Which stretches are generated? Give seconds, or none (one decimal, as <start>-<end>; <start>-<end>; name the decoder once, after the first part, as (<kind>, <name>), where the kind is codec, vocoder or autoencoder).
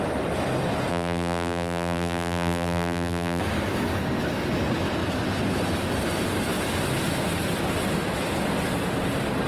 0.9-3.4 (vocoder, BigVGAN v2)